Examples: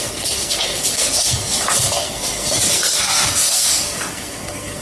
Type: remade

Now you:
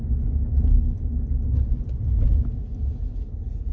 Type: recorded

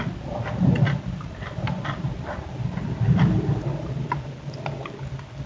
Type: recorded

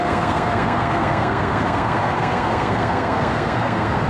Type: remade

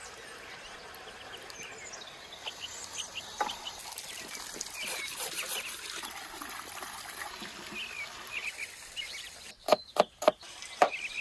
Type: recorded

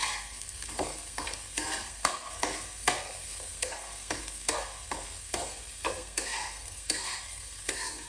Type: remade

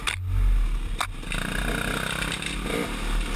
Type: recorded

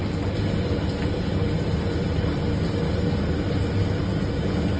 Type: recorded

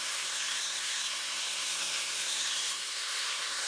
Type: remade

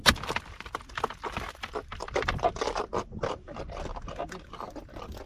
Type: recorded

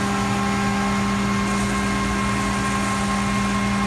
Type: recorded